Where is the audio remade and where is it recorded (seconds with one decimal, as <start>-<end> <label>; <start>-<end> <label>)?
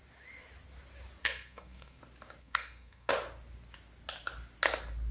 0.0-1.2 recorded; 1.2-2.0 remade; 2.0-2.4 recorded; 2.4-3.1 remade; 3.1-5.1 recorded